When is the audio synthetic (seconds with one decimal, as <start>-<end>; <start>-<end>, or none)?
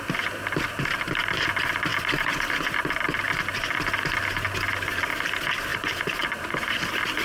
5.7-6.8